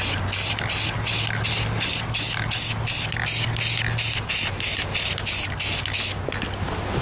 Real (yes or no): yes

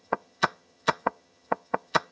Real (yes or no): no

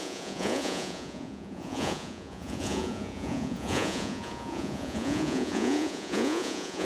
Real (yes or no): no